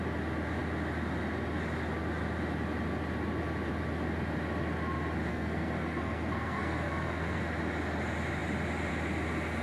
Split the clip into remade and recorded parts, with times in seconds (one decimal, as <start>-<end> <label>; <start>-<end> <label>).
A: 0.0-5.3 recorded; 5.3-7.4 remade; 7.4-9.6 recorded